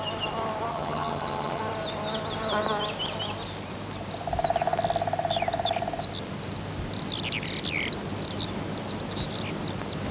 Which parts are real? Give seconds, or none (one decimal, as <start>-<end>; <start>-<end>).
0.0-0.7; 1.6-10.1